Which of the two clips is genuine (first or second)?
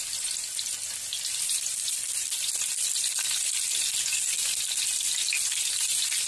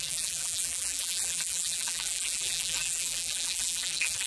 first